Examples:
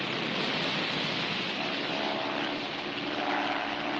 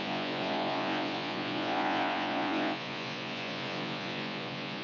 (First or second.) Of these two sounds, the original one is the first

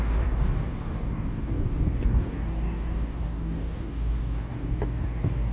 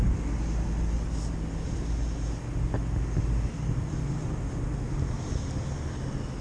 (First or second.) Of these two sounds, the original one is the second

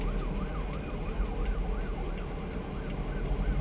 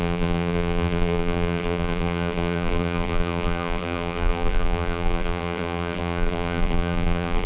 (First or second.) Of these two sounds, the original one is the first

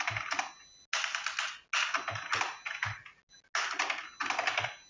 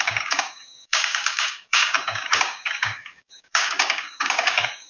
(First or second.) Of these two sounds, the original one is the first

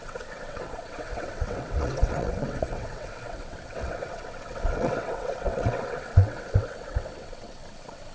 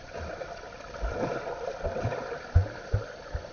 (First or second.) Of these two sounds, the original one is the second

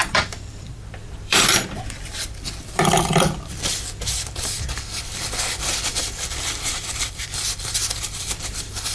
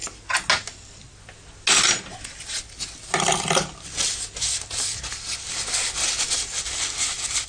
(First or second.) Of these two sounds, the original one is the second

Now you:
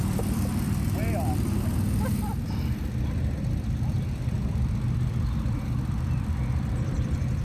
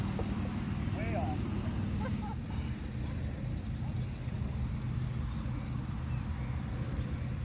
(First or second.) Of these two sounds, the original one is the second